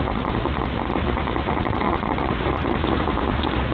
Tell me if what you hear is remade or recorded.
remade